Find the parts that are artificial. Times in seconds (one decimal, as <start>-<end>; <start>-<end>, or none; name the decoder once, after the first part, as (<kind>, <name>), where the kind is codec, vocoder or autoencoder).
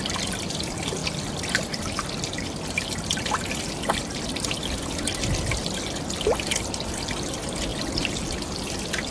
none